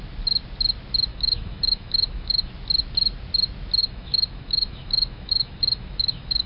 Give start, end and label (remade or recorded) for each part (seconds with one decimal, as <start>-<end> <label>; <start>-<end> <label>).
0.0-1.1 recorded; 1.1-2.5 remade; 2.5-3.8 recorded; 3.8-6.5 remade